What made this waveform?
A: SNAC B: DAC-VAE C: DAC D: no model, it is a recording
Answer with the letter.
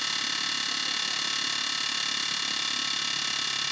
D